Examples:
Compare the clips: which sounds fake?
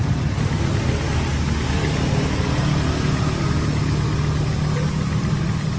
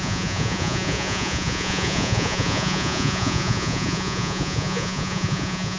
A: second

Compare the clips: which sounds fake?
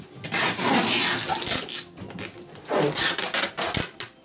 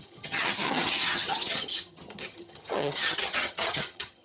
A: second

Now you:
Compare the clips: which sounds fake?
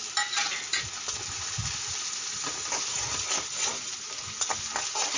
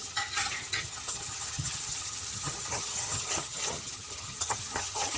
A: second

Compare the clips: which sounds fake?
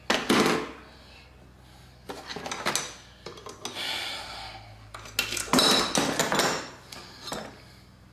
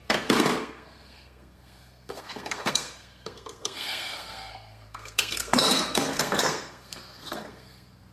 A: second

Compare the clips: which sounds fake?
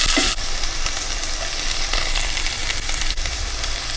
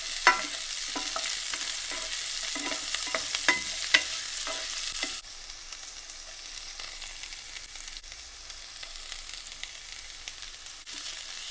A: first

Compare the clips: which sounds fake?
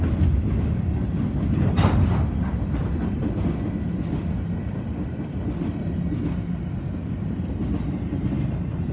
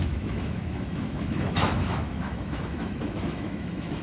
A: second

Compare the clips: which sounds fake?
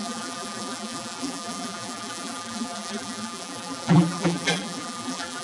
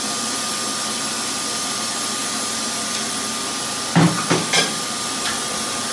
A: first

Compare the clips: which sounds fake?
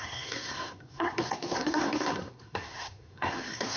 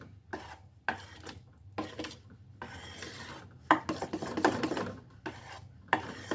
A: first